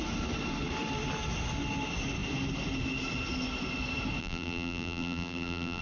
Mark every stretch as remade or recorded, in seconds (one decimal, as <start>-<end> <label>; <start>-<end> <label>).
0.0-4.2 recorded; 4.2-5.8 remade